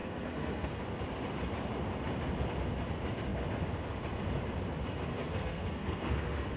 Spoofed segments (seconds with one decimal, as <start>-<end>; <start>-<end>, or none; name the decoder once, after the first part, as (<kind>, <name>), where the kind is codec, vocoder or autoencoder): 0.0-0.8 (codec, SNAC); 5.1-6.6